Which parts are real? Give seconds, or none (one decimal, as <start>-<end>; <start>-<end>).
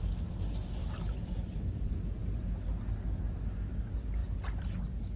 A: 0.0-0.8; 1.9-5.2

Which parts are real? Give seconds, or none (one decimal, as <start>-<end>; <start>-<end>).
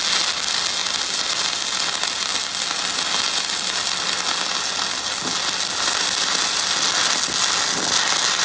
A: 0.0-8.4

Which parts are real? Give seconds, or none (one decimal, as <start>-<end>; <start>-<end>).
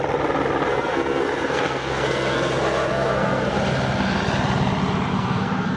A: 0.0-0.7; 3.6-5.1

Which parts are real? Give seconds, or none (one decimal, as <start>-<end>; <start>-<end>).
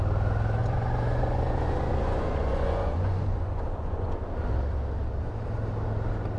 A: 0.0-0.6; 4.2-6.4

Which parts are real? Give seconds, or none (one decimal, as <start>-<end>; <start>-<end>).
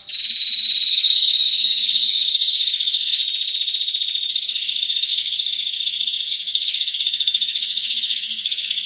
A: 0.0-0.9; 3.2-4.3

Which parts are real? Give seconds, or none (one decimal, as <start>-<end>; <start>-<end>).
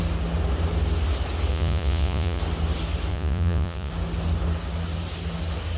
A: 0.0-1.5; 2.4-3.1; 3.9-5.8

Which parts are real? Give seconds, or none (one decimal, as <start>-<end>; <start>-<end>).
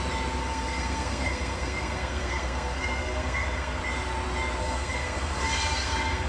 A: 0.0-0.4; 3.8-4.6